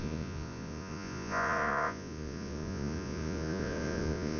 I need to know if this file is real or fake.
fake